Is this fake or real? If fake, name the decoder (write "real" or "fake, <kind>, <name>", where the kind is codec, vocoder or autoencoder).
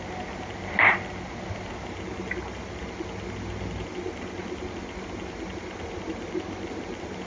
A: real